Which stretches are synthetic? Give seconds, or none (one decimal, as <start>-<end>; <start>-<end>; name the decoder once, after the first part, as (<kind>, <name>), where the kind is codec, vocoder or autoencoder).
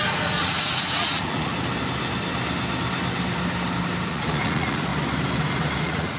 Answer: 0.0-1.5 (vocoder, Vocos); 4.1-4.9; 5.8-6.2